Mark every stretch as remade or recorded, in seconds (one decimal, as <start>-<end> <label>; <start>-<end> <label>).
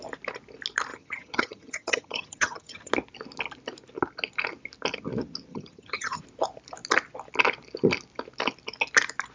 0.0-0.9 recorded; 0.9-2.9 remade; 2.9-5.5 recorded; 5.5-6.2 remade; 6.2-9.3 recorded